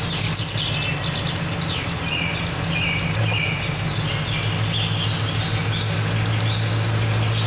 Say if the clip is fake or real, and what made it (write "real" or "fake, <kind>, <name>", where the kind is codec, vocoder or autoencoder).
real